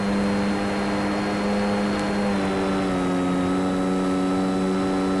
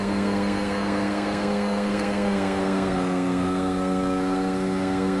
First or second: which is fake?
second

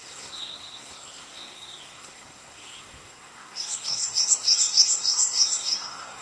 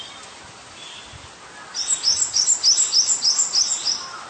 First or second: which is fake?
first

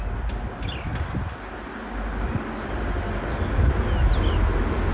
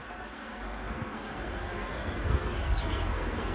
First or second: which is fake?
second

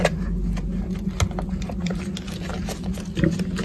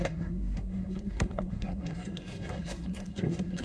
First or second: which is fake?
second